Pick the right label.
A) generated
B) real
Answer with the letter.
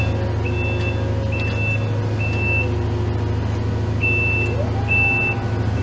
B